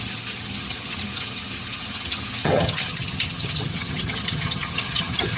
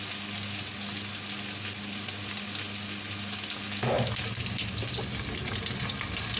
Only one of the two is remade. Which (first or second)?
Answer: first